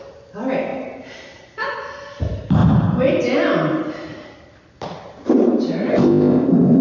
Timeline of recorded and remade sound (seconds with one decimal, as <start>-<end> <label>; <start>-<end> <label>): 0.0-5.9 recorded; 5.9-6.8 remade